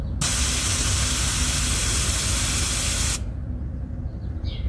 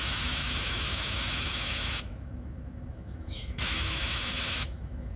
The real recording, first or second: first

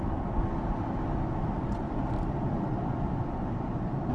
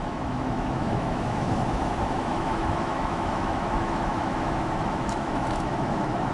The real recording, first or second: first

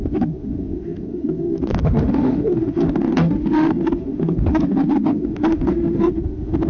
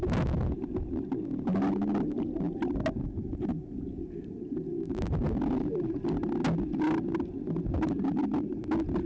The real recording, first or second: second